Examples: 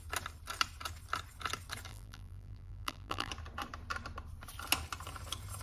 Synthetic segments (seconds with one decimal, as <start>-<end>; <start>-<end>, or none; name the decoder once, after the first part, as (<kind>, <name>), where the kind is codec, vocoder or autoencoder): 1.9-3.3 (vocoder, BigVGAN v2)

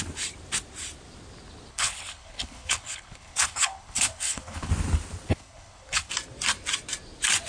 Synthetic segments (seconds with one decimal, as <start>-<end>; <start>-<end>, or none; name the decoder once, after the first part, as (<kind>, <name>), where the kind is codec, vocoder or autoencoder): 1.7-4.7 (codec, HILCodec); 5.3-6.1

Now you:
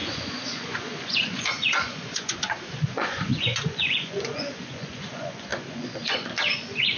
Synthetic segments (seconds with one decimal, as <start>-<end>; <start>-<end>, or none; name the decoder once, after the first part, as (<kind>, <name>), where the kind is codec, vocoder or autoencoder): 0.0-7.0 (vocoder, Vocos)

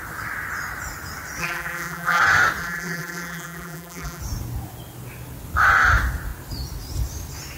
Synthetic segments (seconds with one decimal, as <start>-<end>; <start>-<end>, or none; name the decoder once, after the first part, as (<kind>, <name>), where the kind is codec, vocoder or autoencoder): 1.4-2.2 (vocoder, BigVGAN v2); 2.6-4.2

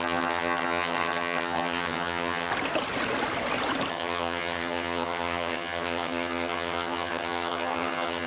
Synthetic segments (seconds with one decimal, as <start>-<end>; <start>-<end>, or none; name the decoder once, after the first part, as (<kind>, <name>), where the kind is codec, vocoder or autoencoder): 0.0-2.5 (vocoder, HiFi-GAN); 3.9-8.3